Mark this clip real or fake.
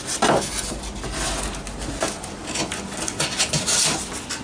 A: real